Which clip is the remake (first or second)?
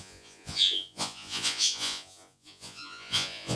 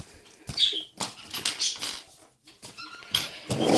first